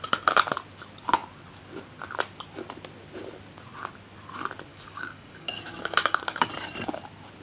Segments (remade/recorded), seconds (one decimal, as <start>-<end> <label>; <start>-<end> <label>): 0.0-4.7 recorded; 4.7-6.5 remade; 6.5-7.4 recorded